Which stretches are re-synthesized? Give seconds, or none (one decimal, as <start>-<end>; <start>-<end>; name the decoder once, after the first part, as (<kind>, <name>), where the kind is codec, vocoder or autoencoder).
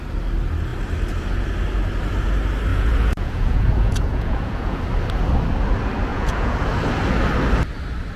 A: 2.7-4.8 (vocoder, Vocos); 6.1-6.7